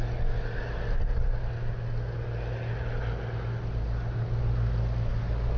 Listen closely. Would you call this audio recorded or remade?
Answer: recorded